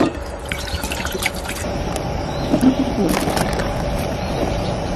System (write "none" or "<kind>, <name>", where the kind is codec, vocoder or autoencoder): vocoder, BigVGAN v2